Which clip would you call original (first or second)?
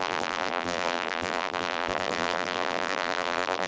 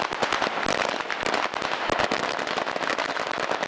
second